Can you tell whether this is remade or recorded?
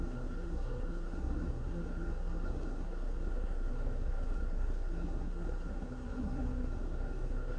remade